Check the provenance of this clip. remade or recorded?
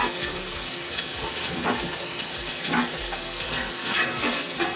remade